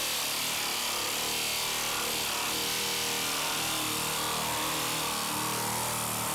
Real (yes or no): yes